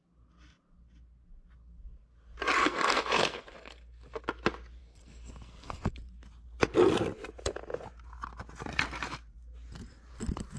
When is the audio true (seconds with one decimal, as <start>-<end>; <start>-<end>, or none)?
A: 0.0-2.6; 4.2-4.8; 5.9-10.6